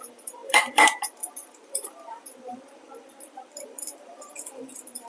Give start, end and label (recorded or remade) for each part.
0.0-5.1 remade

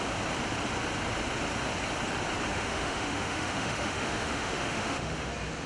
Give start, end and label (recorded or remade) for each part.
0.0-2.5 recorded; 2.5-5.3 remade; 5.3-5.7 recorded

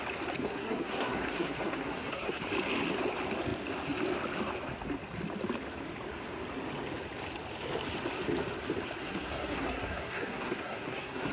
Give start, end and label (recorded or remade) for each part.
0.0-0.4 recorded; 0.4-2.4 remade; 2.4-9.0 recorded; 9.0-11.3 remade